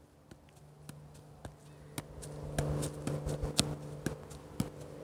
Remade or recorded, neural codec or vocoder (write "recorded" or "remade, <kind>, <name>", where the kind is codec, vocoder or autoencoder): recorded